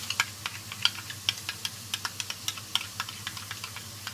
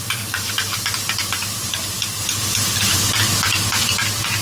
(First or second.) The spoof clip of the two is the second